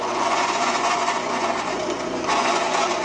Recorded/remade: remade